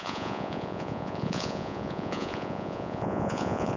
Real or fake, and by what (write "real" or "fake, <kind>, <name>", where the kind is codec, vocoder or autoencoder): fake, vocoder, Vocos